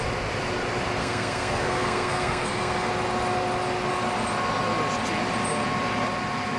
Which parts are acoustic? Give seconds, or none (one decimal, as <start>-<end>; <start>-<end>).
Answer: 0.0-1.0; 2.9-6.6